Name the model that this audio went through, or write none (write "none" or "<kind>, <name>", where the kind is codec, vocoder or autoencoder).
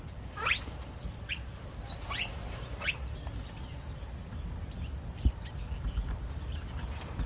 none